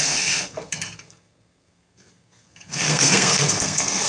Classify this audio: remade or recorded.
remade